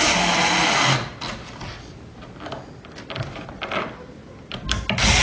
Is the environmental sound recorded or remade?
recorded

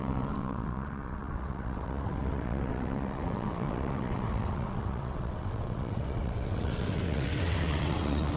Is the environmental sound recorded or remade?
remade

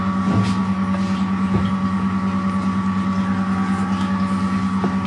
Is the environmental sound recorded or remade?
recorded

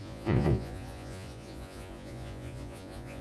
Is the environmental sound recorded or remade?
remade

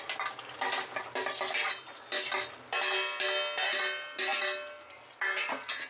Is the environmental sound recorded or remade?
recorded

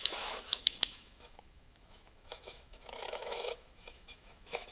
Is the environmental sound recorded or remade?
remade